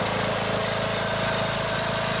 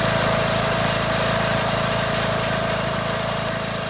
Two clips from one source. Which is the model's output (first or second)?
second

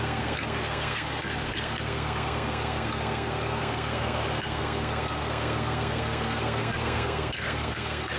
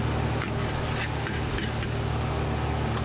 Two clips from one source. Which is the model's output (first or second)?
first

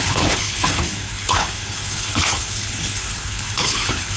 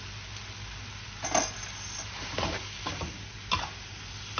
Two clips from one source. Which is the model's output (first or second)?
first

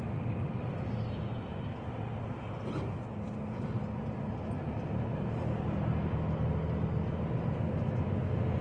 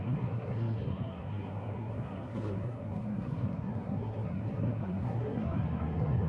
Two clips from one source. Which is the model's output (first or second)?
second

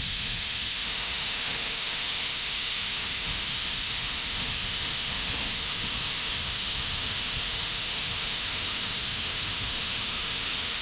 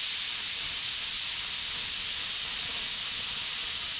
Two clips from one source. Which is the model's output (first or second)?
first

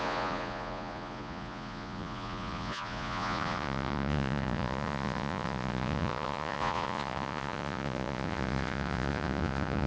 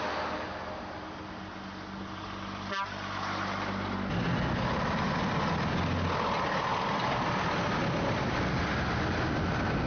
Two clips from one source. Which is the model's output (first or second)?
first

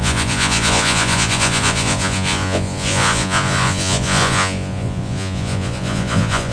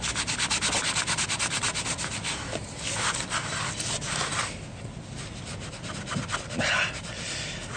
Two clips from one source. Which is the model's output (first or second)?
first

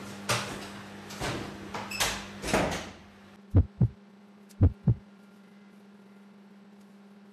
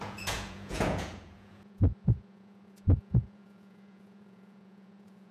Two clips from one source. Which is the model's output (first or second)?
second